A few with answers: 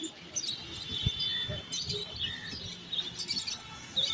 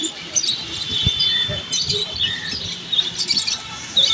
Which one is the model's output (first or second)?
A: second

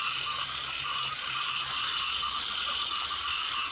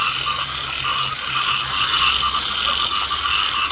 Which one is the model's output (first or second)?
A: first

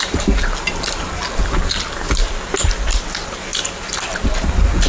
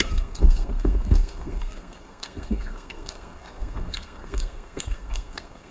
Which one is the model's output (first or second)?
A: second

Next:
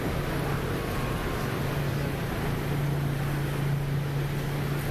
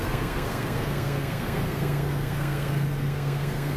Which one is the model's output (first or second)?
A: second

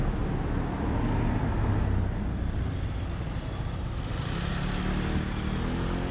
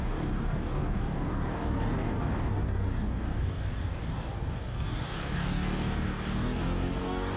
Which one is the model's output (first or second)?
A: second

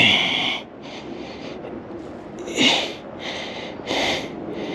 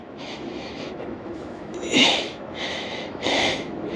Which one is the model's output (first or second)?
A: second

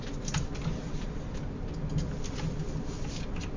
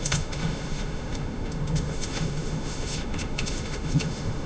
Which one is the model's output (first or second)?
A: second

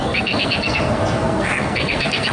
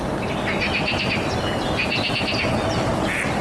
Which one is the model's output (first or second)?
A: first